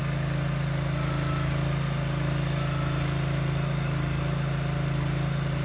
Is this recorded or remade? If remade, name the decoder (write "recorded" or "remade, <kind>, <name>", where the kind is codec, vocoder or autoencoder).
recorded